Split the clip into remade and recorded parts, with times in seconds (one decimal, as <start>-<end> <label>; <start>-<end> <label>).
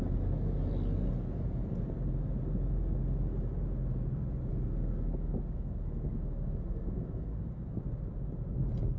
0.0-4.5 recorded; 4.5-7.8 remade; 7.8-9.0 recorded